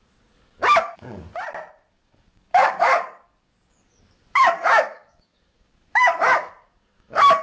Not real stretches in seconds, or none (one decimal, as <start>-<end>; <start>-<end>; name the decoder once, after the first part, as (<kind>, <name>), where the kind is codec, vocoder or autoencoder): 0.0-1.3 (codec, DAC); 1.9-7.4